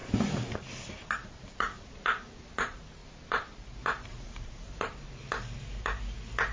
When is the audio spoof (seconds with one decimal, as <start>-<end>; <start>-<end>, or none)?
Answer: 3.0-5.1